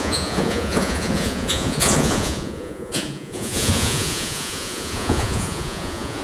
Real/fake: fake